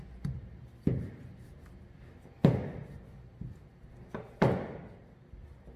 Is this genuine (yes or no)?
yes